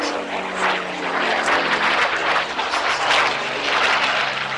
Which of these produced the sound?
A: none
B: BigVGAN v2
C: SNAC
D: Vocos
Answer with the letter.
A